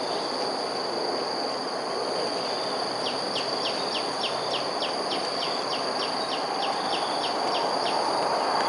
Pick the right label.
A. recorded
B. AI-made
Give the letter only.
A